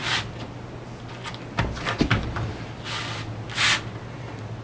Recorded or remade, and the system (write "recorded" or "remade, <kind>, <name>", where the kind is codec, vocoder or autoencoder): recorded